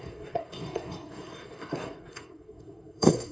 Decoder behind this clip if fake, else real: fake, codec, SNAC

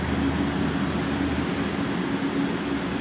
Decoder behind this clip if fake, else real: real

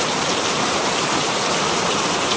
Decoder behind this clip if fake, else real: fake, vocoder, BigVGAN v2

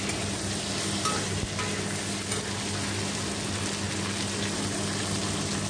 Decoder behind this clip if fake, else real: real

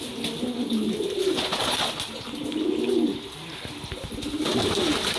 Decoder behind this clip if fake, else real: real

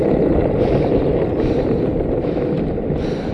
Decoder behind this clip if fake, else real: real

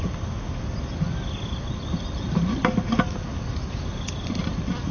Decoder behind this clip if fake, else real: real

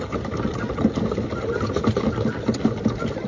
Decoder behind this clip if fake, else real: real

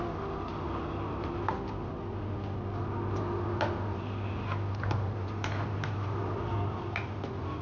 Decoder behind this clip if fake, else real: real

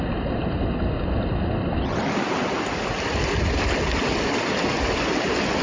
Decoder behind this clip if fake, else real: real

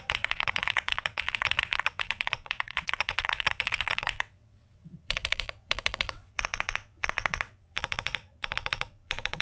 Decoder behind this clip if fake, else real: fake, vocoder, WaveNeXt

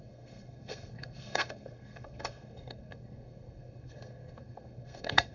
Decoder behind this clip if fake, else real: fake, codec, SNAC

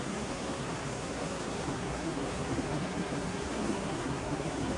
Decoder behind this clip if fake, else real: fake, codec, SNAC